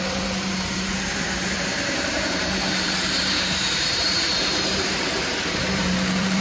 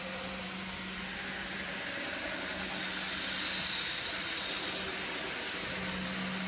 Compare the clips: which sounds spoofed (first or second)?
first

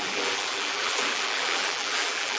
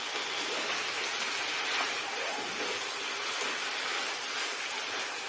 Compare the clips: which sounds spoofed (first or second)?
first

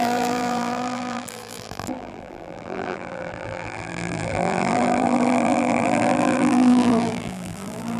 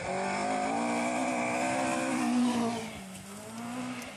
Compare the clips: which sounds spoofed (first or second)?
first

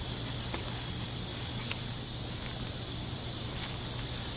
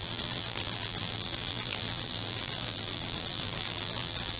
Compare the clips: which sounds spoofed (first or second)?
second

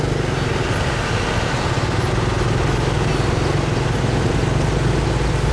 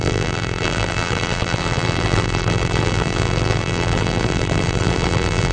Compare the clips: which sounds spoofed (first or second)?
second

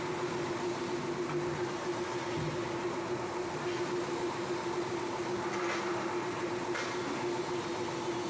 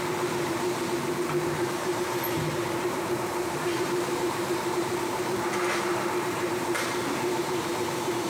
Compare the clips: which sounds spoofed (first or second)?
second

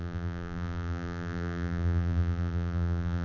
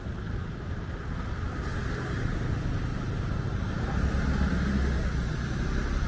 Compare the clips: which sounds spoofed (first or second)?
first